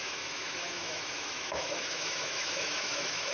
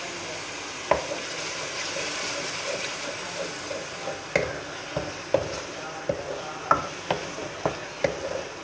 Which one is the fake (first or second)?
first